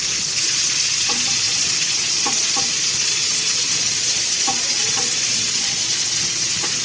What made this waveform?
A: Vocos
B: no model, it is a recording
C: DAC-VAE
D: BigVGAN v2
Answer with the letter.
A